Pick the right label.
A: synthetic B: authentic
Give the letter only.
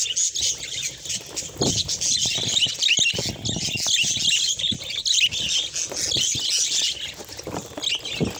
B